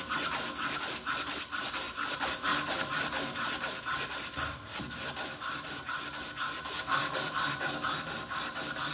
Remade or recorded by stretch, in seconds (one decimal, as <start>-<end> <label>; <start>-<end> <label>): 0.0-8.9 recorded